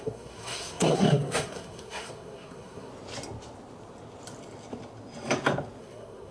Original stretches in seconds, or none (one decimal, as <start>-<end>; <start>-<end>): 2.9-5.8

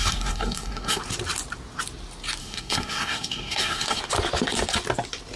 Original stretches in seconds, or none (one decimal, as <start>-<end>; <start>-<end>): 1.0-2.4; 4.0-5.4

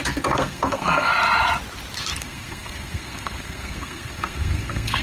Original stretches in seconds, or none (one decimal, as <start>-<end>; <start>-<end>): 1.1-2.2